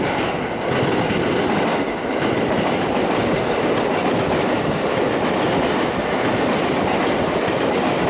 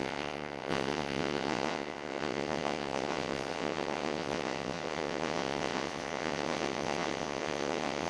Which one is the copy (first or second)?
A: second